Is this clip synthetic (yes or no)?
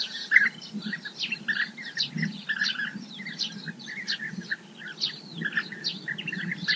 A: no